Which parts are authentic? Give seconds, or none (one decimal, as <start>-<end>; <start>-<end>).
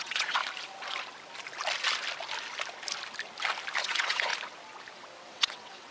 0.4-3.8; 4.3-5.2